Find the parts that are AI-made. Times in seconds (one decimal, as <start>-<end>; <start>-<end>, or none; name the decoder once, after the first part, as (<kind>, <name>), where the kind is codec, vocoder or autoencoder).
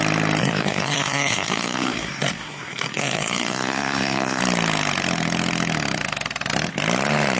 0.4-4.4 (codec, SNAC)